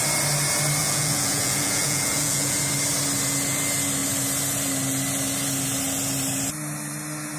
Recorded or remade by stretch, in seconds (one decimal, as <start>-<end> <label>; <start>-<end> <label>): 0.0-0.8 recorded; 0.8-2.6 remade; 2.6-7.4 recorded